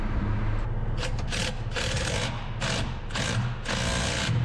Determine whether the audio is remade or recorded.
recorded